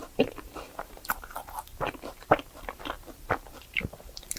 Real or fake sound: fake